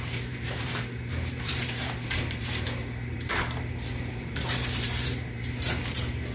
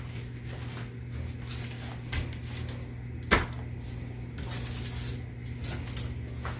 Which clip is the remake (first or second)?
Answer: first